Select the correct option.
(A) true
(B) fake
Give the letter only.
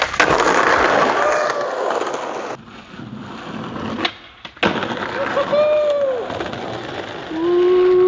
A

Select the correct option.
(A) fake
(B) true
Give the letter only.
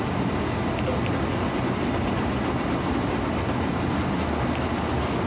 B